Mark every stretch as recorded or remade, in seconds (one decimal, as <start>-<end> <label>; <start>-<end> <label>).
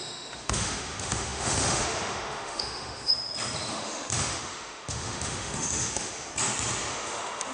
0.0-3.1 remade; 3.1-3.7 recorded; 3.7-6.3 remade; 6.3-6.9 recorded; 6.9-7.5 remade